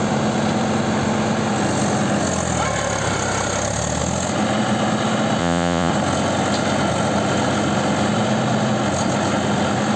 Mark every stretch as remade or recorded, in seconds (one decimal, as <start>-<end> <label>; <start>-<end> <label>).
0.0-5.4 recorded; 5.4-5.9 remade; 5.9-10.0 recorded